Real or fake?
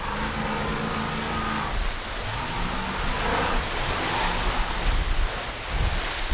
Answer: real